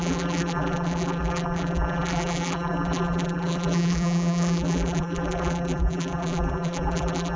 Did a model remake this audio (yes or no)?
yes